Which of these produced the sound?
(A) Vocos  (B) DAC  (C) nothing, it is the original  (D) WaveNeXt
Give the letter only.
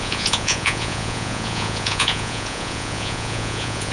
A